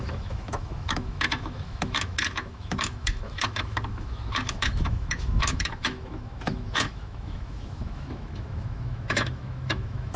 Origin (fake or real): fake